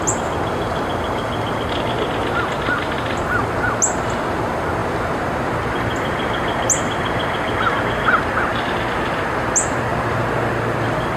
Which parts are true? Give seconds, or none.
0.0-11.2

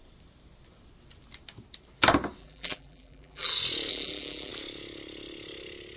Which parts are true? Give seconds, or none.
0.0-2.4; 3.5-3.9; 4.5-6.0

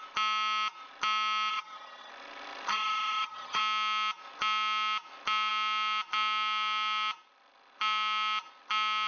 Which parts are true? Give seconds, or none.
0.0-1.5; 2.1-2.7; 3.6-9.1

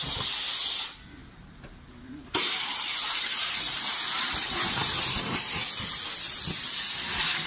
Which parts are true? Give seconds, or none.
0.0-1.2; 5.7-7.5